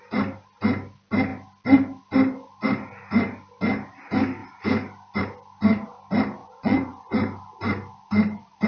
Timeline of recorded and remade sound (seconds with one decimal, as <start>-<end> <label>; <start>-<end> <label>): 0.0-6.4 recorded; 6.4-7.1 remade; 7.1-8.7 recorded